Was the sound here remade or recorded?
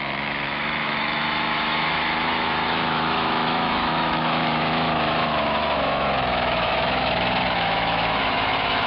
remade